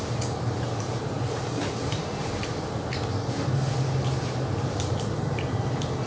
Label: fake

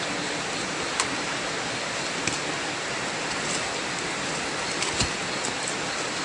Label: real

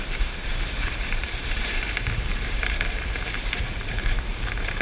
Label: fake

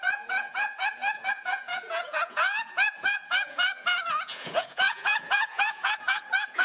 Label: fake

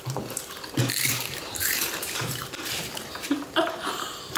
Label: fake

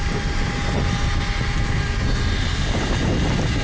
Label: real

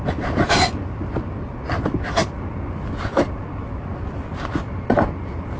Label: real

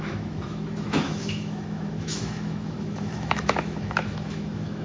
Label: fake